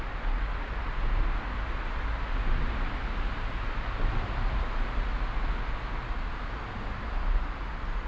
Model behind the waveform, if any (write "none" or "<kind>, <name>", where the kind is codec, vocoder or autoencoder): none